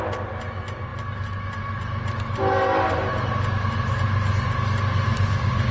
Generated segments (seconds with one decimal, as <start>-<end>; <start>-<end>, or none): none